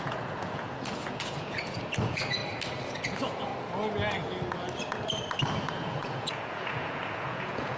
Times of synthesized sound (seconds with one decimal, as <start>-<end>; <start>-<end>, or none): 0.0-2.4; 2.9-3.5; 5.7-7.8

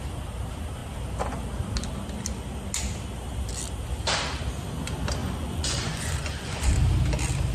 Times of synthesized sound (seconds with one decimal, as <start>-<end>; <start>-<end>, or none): 5.2-6.7

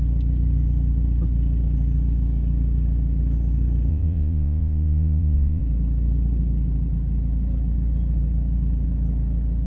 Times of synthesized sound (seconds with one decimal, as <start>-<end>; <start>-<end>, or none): 3.9-5.6

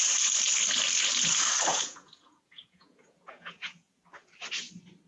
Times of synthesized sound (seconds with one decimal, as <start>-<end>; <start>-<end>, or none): 1.7-4.0